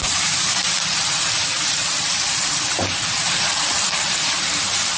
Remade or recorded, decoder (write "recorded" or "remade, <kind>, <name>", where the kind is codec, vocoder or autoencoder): remade, vocoder, BigVGAN v2